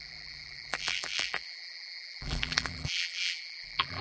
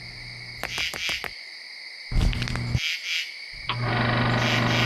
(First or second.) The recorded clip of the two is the second